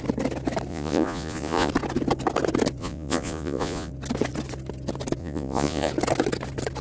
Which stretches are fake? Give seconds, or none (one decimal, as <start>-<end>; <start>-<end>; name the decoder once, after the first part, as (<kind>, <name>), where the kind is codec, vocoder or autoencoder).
0.7-1.7 (vocoder, Vocos); 2.8-3.9; 5.2-5.9